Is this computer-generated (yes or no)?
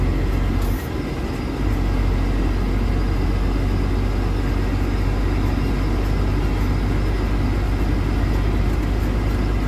no